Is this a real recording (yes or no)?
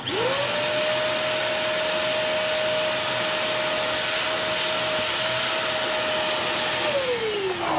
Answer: yes